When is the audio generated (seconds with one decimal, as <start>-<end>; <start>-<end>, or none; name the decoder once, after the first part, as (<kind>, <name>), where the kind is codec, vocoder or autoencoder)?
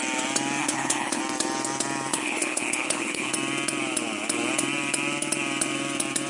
0.6-1.2 (codec, HILCodec); 2.1-3.3